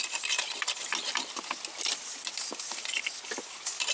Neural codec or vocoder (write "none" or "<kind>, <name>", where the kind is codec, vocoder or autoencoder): none